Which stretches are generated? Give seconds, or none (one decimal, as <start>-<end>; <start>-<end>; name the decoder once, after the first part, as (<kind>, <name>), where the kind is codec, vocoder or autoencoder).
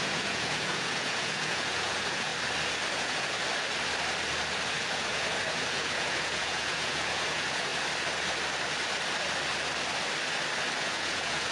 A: 0.0-2.3 (vocoder, Vocos); 2.9-3.4; 4.7-7.7; 10.8-11.5